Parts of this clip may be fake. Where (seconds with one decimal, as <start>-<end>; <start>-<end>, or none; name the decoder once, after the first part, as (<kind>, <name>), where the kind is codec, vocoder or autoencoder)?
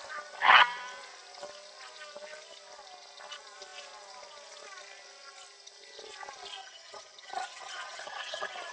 6.6-8.7 (vocoder, HiFi-GAN)